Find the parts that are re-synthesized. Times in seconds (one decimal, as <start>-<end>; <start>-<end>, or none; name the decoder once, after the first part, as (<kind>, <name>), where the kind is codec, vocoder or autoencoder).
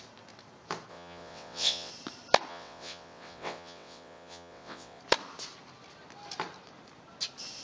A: 0.9-1.9 (vocoder, WaveNeXt); 2.5-5.0